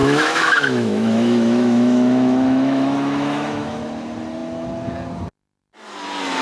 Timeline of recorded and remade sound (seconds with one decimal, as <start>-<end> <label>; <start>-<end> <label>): 0.0-3.8 remade; 3.8-6.4 recorded